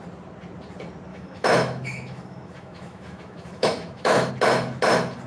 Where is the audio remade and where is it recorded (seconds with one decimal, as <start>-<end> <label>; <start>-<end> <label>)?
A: 0.0-1.1 recorded; 1.1-4.3 remade; 4.3-5.3 recorded